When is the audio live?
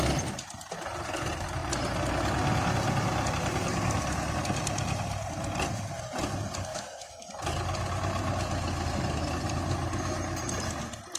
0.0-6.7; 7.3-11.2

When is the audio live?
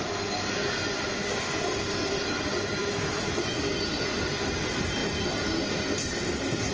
0.0-2.8; 3.6-6.7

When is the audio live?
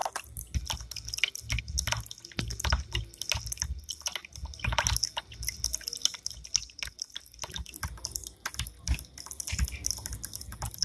0.0-10.8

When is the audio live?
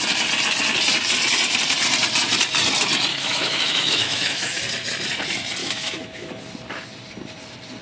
0.0-3.1; 4.6-5.6; 6.3-7.8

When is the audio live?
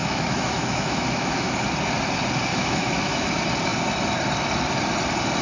1.5-2.5; 3.3-5.4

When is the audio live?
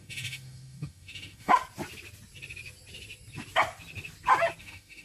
1.6-4.6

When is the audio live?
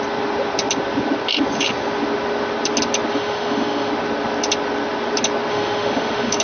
0.0-3.1; 3.9-5.5